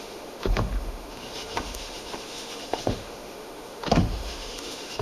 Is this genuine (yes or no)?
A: no